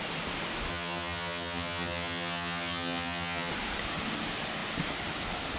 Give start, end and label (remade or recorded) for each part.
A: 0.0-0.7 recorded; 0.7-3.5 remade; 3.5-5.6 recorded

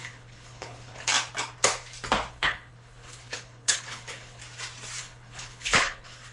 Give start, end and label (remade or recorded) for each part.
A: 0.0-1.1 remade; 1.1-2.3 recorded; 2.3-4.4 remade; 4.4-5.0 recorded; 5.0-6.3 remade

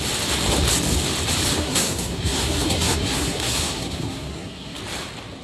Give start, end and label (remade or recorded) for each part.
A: 0.0-1.6 recorded; 1.6-4.8 remade; 4.8-5.4 recorded

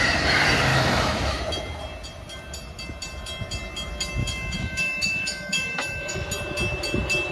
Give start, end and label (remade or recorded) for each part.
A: 0.0-0.7 recorded; 0.7-1.4 remade; 1.4-4.2 recorded; 4.2-6.3 remade; 6.3-7.3 recorded

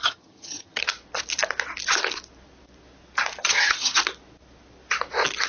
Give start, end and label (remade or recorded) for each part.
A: 0.0-0.8 remade; 0.8-3.4 recorded; 3.4-4.0 remade; 4.0-5.5 recorded

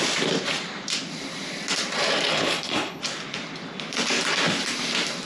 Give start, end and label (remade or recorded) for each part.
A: 0.0-2.3 recorded; 2.3-3.0 remade; 3.0-5.3 recorded

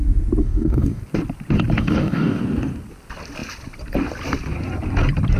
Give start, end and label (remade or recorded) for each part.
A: 0.0-0.4 recorded; 0.4-1.0 remade; 1.0-1.8 recorded; 1.8-2.4 remade; 2.4-5.4 recorded

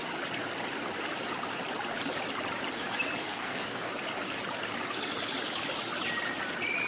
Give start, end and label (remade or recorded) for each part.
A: 0.0-3.2 recorded; 3.2-3.9 remade; 3.9-6.9 recorded